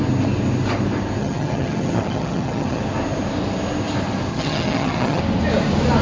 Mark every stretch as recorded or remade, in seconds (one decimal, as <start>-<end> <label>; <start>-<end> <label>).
0.0-1.2 recorded; 1.2-2.8 remade; 2.8-4.3 recorded; 4.3-5.2 remade; 5.2-6.0 recorded